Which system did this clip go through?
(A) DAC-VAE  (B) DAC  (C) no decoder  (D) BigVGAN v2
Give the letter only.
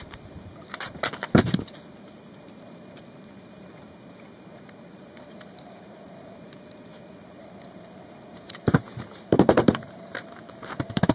D